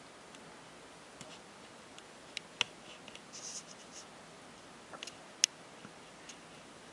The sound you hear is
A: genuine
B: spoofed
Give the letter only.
A